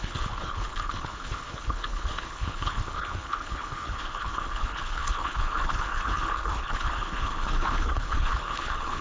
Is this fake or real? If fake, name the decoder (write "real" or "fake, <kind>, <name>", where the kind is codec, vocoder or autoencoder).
fake, codec, HILCodec